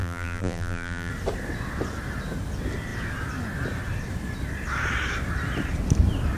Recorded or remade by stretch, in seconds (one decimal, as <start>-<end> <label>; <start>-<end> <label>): 0.0-1.1 remade; 1.1-6.4 recorded